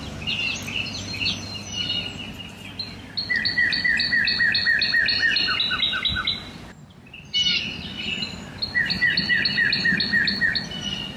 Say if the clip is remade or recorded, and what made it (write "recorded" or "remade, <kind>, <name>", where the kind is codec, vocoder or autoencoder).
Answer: recorded